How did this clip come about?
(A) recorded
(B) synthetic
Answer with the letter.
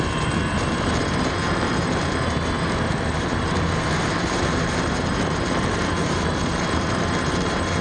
B